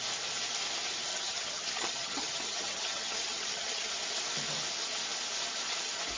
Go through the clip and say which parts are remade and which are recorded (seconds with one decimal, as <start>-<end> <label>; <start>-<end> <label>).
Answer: 0.0-1.1 recorded; 1.1-3.9 remade; 3.9-6.2 recorded